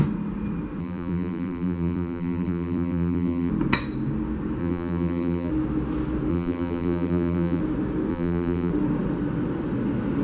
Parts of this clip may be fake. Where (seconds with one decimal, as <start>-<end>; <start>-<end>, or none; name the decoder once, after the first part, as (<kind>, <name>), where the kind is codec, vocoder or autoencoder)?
0.8-3.5 (vocoder, BigVGAN v2); 4.6-5.5; 6.3-7.6; 8.1-8.7